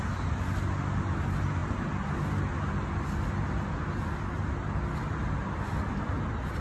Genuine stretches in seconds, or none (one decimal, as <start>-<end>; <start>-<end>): 0.0-6.6